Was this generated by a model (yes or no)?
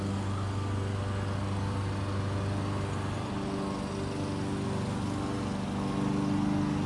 no